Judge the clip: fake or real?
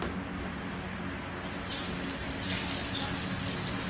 real